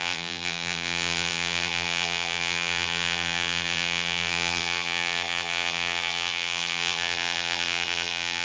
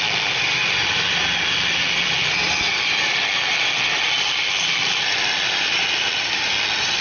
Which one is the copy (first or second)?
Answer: first